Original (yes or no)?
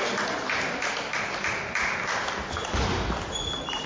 yes